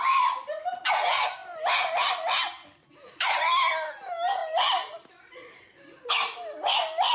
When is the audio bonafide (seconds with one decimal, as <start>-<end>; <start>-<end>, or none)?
0.0-7.1